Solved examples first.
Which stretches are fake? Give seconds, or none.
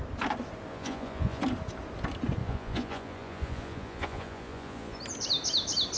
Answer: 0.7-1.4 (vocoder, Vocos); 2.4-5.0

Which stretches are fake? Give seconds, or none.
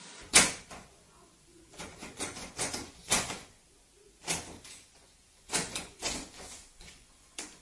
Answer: 0.0-3.6 (vocoder, Vocos); 4.6-7.6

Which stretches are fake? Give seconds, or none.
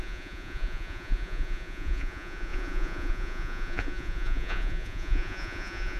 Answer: 0.0-6.0 (vocoder, Vocos)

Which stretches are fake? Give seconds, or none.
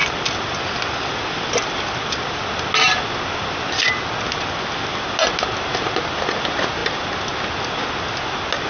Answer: none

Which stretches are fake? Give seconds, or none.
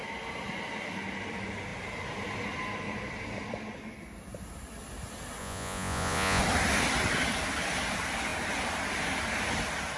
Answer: 5.4-6.4 (vocoder, Vocos)